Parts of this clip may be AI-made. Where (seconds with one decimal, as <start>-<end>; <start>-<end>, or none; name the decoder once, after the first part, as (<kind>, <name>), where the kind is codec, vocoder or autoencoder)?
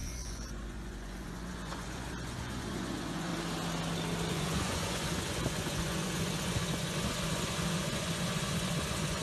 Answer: 0.0-3.3 (vocoder, Vocos); 4.3-9.2